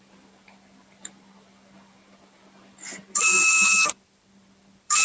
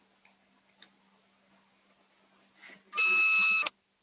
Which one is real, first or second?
second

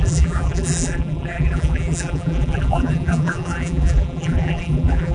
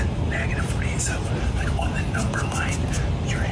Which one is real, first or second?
second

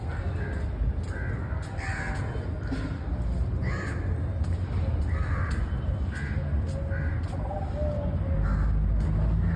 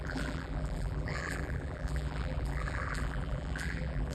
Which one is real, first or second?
first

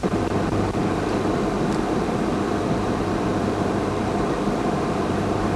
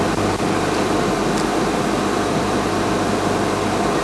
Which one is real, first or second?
second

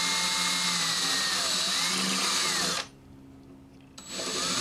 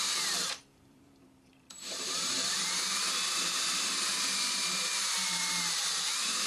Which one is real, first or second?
first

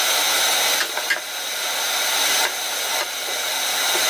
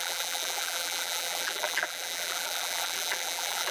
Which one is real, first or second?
first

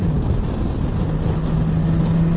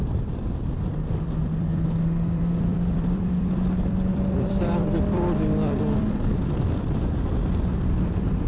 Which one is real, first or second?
first